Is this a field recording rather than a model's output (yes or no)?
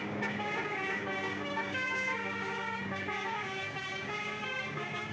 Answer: no